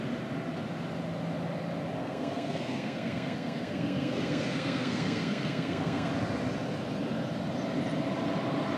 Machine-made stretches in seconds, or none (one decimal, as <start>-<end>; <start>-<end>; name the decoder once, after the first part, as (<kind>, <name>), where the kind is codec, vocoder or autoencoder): 2.0-6.1 (codec, SNAC)